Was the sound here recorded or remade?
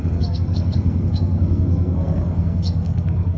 remade